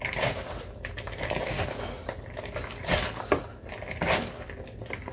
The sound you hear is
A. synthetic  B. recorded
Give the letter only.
B